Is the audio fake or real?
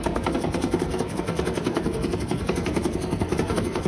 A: fake